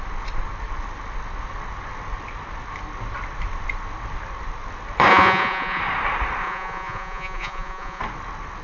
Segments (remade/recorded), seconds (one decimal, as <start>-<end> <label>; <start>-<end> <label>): 0.0-5.1 recorded; 5.1-5.8 remade; 5.8-6.4 recorded; 6.4-8.0 remade; 8.0-8.6 recorded